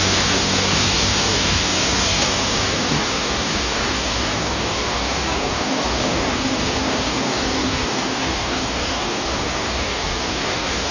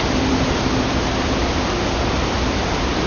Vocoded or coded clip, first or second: first